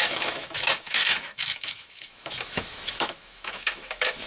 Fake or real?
fake